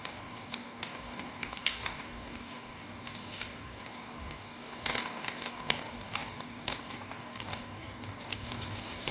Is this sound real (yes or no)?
no